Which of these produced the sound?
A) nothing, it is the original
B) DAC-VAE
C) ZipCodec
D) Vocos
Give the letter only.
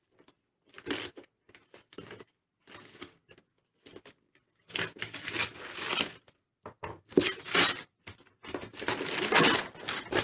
A